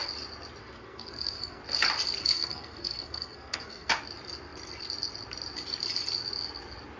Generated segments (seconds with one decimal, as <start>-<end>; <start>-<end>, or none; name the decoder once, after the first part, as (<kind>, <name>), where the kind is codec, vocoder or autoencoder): 0.6-1.6 (codec, SNAC); 2.2-3.9